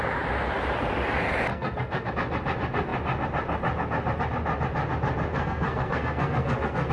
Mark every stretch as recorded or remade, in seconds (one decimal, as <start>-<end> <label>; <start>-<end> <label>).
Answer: 0.0-1.5 recorded; 1.5-2.1 remade; 2.1-5.3 recorded; 5.3-6.9 remade